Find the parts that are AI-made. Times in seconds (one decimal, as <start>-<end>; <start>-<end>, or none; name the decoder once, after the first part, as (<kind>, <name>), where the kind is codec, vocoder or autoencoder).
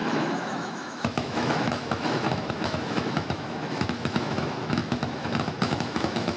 0.0-6.4 (autoencoder, DAC-VAE)